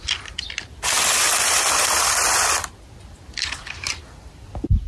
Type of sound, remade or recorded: remade